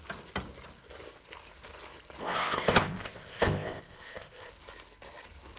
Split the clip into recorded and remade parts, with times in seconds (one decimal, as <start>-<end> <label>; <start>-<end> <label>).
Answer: 0.0-2.2 recorded; 2.2-4.5 remade; 4.5-5.6 recorded